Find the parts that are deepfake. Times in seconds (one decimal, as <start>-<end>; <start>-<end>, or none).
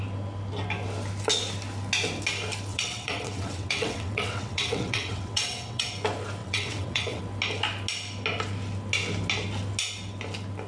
2.7-5.9; 6.4-7.2